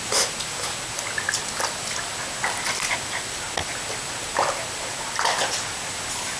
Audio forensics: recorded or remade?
recorded